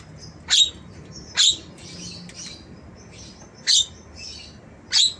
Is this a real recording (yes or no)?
yes